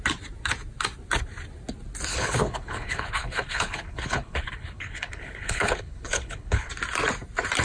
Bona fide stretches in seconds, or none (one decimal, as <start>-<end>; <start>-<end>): 0.0-2.1; 6.7-7.6